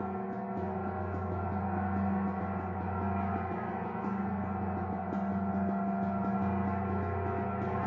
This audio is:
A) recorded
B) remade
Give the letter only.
A